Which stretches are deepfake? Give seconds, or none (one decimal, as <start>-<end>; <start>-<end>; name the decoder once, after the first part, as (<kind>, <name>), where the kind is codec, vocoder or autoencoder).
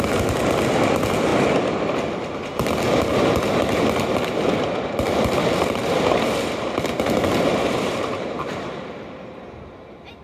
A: 5.8-6.7 (vocoder, BigVGAN v2); 7.5-8.9